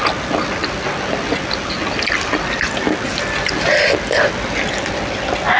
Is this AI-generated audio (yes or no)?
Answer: no